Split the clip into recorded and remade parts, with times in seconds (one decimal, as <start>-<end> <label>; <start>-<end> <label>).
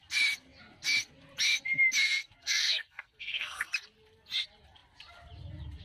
0.0-2.4 recorded; 2.4-3.7 remade; 3.7-5.8 recorded